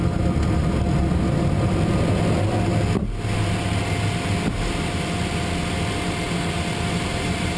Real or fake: real